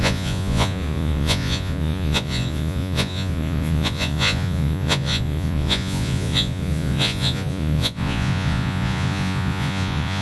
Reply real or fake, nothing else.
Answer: fake